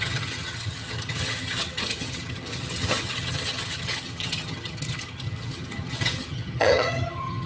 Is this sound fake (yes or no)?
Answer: yes